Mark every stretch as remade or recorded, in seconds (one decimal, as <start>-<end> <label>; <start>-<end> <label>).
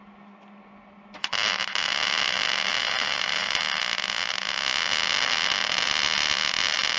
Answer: 0.0-2.8 recorded; 2.8-3.6 remade; 3.6-7.0 recorded